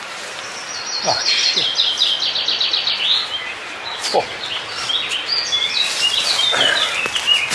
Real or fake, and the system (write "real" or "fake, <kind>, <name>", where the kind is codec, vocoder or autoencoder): real